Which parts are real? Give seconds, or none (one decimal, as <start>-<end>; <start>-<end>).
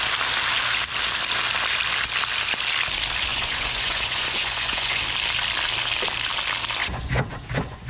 0.0-3.3; 5.0-6.8